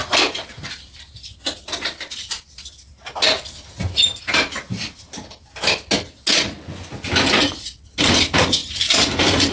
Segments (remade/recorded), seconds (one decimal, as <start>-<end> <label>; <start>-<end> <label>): 0.0-9.5 recorded